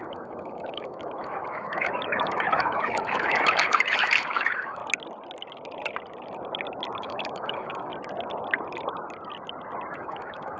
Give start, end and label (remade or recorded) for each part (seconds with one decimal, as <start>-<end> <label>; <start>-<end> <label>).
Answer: 0.0-4.8 remade; 4.8-7.0 recorded; 7.0-7.9 remade; 7.9-9.9 recorded; 9.9-10.6 remade